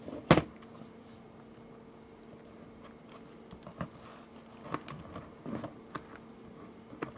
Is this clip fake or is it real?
real